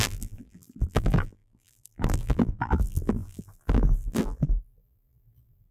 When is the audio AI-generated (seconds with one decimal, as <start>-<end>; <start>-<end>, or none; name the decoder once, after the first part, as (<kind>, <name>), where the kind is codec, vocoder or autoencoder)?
0.0-5.7 (vocoder, BigVGAN v2)